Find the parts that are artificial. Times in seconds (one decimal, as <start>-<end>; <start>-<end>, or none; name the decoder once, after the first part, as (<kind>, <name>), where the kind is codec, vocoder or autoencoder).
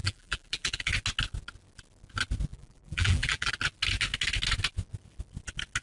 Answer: 0.0-0.9 (vocoder, BigVGAN v2); 2.5-3.5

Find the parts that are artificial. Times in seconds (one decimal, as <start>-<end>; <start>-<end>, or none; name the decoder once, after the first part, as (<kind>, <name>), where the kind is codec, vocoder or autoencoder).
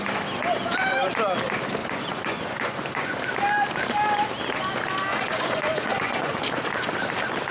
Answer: 1.8-3.2 (vocoder, Vocos); 5.1-6.4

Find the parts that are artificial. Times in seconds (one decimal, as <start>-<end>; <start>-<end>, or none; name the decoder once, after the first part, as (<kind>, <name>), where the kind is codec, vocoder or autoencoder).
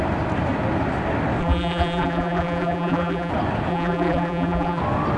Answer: 1.4-3.3 (vocoder, BigVGAN v2); 3.7-4.8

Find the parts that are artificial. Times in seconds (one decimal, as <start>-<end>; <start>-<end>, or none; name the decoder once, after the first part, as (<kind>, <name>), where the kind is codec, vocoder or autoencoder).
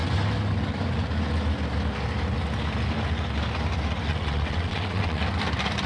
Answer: 4.1-5.2 (vocoder, WaveNeXt)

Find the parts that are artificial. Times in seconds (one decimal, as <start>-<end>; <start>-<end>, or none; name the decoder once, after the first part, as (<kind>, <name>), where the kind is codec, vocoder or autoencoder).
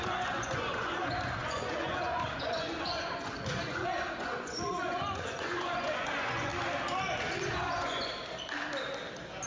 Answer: 0.0-6.5 (vocoder, Vocos); 7.5-8.1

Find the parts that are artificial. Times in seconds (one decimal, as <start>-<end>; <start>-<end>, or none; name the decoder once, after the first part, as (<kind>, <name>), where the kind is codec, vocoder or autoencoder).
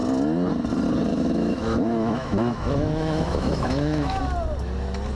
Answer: 1.1-4.2 (autoencoder, DAC-VAE)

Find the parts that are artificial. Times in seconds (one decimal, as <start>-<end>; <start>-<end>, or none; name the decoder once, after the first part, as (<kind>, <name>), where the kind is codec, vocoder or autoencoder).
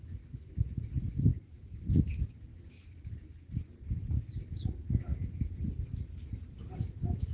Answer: 1.3-1.9 (vocoder, BigVGAN v2); 2.5-4.2; 5.1-6.6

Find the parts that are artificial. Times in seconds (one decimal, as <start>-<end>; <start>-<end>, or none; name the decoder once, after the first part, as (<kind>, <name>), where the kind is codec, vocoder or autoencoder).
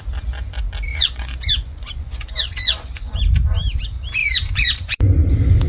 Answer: 0.9-3.2 (vocoder, Vocos); 4.2-5.3